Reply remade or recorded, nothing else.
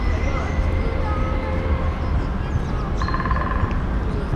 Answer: recorded